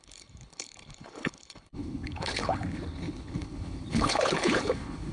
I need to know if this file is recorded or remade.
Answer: remade